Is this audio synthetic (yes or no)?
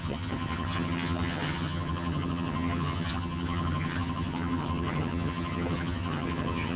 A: yes